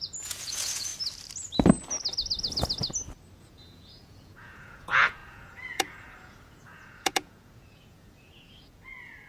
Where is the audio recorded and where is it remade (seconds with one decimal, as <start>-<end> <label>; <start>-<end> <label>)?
0.0-0.9 remade; 0.9-3.4 recorded; 3.4-9.3 remade